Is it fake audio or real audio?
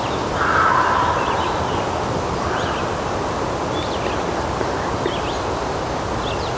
real